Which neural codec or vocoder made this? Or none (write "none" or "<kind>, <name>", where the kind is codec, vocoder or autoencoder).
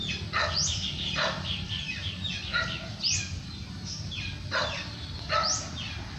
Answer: none